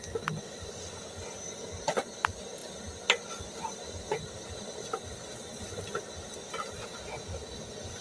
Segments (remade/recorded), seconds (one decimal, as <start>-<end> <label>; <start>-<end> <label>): 0.0-8.0 recorded